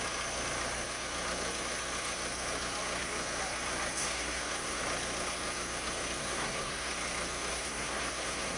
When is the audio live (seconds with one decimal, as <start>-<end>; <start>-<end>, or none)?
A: 0.0-4.0; 4.8-6.2; 6.9-7.5